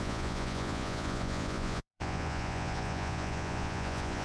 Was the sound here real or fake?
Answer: fake